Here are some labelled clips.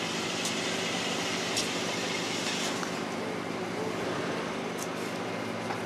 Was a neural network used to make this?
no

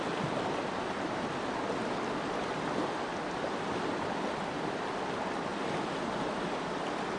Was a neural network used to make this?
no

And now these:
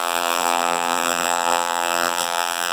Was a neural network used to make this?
yes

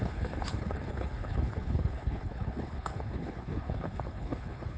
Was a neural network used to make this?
yes